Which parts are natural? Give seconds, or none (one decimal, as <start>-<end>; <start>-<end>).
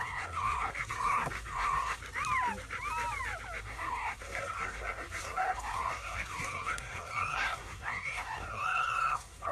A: 2.0-3.6